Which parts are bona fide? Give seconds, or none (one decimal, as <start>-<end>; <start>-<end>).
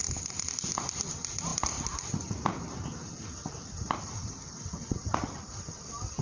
0.0-6.2